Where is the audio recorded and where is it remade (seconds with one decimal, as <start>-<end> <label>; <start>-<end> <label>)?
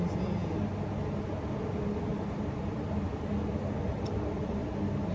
0.0-2.1 recorded; 2.1-4.5 remade; 4.5-5.1 recorded